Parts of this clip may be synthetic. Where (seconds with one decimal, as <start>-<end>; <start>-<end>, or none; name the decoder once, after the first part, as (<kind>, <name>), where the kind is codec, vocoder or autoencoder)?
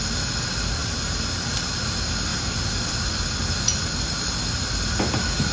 0.8-1.7 (vocoder, BigVGAN v2); 2.3-3.1